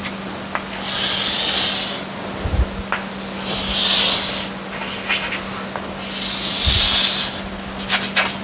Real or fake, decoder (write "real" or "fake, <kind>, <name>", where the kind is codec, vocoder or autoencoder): real